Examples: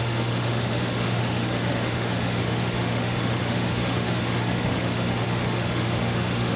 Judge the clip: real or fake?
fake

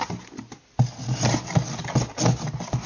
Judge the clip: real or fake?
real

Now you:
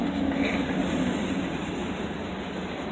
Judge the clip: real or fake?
real